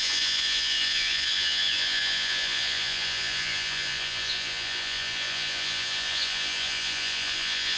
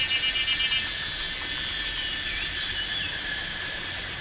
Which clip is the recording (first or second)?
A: second